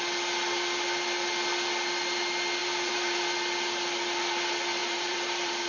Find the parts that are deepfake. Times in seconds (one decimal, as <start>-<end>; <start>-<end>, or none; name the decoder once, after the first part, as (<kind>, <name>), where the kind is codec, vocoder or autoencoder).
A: 2.6-3.2 (vocoder, BigVGAN v2); 4.8-5.7